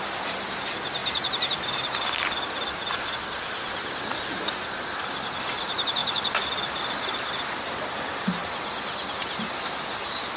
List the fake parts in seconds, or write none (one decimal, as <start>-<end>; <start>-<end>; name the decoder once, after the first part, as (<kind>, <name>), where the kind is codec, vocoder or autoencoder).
0.0-10.4 (vocoder, BigVGAN v2)